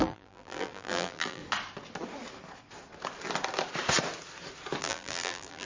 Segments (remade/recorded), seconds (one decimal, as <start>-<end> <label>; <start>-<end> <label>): 0.0-1.4 remade; 1.4-4.8 recorded; 4.8-5.7 remade